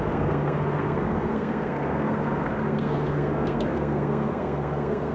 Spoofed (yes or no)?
yes